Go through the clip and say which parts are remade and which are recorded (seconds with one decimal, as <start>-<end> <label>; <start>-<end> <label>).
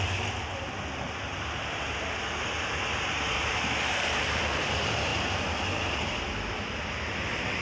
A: 0.0-0.5 remade; 0.5-3.6 recorded; 3.6-5.1 remade; 5.1-6.5 recorded; 6.5-7.6 remade